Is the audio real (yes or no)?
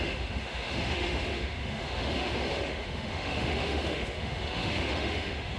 no